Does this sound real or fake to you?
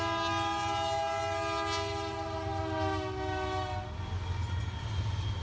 real